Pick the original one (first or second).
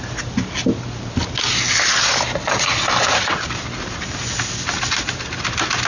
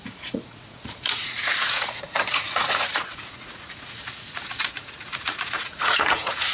first